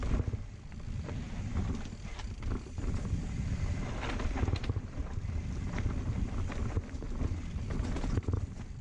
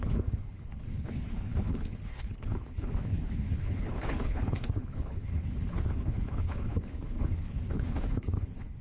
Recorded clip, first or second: first